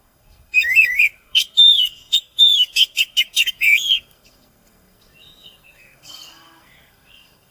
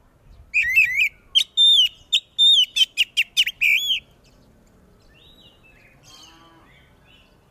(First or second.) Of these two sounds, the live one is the second